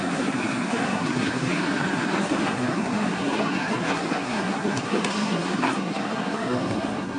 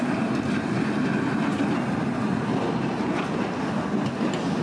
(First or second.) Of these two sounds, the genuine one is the second